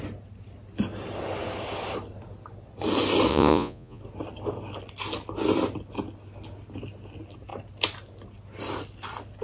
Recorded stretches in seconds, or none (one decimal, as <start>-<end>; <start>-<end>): 0.0-3.3; 4.0-9.4